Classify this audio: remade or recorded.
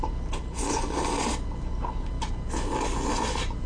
recorded